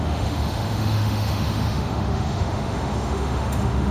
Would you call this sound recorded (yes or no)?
no